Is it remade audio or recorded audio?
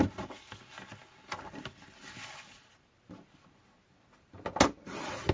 recorded